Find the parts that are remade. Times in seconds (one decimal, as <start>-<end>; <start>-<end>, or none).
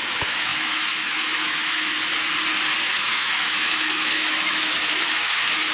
0.0-1.9; 2.8-5.7